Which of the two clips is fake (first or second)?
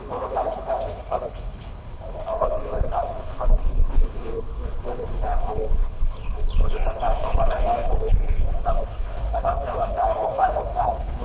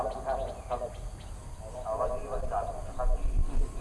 first